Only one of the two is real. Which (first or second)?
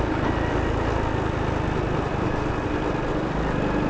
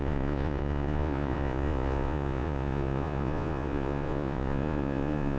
first